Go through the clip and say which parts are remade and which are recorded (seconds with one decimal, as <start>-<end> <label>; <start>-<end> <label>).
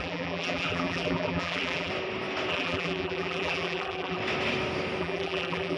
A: 0.0-1.9 remade; 1.9-2.5 recorded; 2.5-4.2 remade; 4.2-5.0 recorded; 5.0-5.8 remade